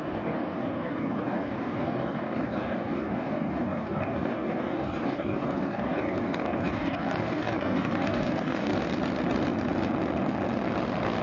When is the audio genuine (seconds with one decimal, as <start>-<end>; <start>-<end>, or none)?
8.7-11.2